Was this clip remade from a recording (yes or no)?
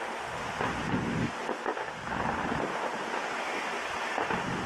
no